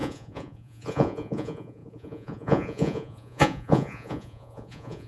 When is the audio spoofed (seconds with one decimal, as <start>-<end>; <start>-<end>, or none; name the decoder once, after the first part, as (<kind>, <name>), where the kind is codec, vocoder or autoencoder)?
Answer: 0.0-5.1 (vocoder, Vocos)